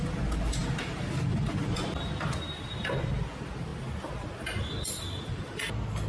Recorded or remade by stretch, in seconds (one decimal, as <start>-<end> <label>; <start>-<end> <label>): 0.0-6.1 recorded